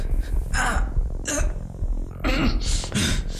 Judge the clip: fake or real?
real